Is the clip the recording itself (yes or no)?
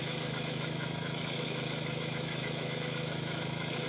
no